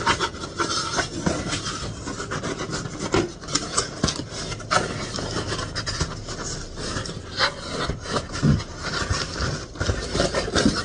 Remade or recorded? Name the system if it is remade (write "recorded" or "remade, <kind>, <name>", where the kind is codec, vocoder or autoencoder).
recorded